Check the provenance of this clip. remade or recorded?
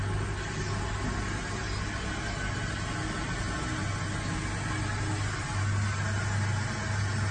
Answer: recorded